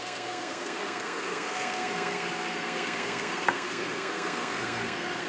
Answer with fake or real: fake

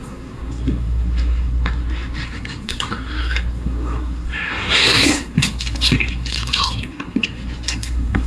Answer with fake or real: fake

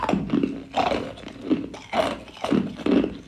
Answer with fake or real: real